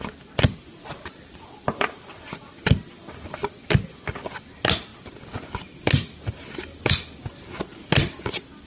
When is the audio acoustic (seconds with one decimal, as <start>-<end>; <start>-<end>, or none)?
0.0-4.9; 8.2-8.7